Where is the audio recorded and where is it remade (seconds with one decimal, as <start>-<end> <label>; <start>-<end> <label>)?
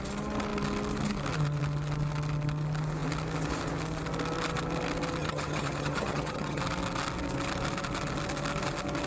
0.0-5.2 recorded; 5.2-6.6 remade; 6.6-9.1 recorded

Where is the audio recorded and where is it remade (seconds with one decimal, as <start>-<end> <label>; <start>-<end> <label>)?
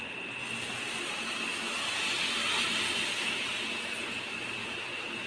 0.0-0.4 recorded; 0.4-1.3 remade; 1.3-4.6 recorded; 4.6-5.3 remade